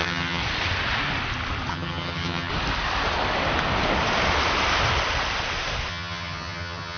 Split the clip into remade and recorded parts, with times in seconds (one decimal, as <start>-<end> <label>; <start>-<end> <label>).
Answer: 0.0-0.4 remade; 0.4-1.7 recorded; 1.7-2.5 remade; 2.5-5.9 recorded; 5.9-7.0 remade